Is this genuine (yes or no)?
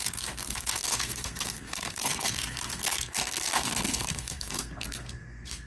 no